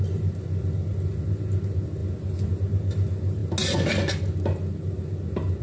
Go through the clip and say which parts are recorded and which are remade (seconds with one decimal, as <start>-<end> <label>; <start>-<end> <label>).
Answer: 0.0-5.6 recorded